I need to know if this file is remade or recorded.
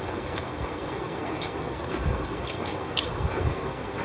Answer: remade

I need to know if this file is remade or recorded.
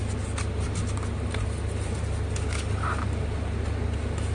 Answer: recorded